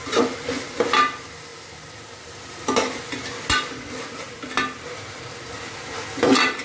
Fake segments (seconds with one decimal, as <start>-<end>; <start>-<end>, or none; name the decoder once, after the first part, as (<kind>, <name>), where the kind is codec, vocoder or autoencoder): none